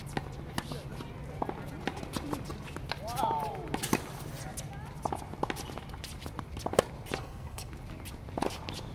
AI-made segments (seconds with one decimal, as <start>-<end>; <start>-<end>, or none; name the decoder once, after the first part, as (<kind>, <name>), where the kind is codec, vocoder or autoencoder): 7.2-7.7 (codec, SNAC)